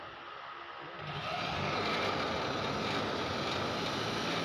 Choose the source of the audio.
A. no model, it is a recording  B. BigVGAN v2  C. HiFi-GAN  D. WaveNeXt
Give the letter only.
A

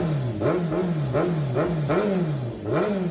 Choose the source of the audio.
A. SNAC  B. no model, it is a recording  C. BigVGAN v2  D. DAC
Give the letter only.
B